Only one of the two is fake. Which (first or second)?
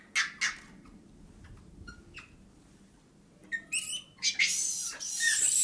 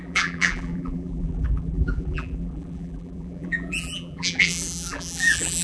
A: second